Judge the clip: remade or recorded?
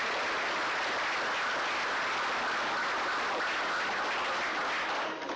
recorded